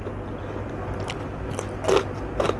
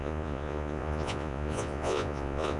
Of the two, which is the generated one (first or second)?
second